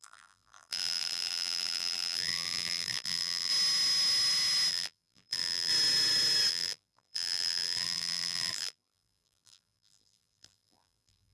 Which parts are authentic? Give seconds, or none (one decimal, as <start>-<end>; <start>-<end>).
3.5-4.7; 5.7-6.5